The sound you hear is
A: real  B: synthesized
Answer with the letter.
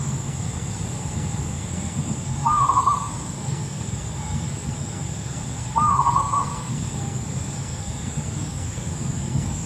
B